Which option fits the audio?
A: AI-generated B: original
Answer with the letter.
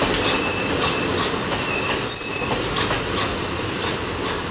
B